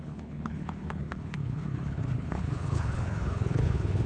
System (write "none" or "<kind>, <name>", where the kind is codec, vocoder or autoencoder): codec, HILCodec